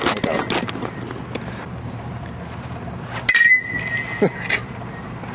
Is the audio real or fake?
real